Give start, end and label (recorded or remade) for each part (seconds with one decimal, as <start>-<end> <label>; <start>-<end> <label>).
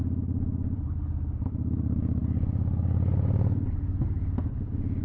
0.0-5.0 recorded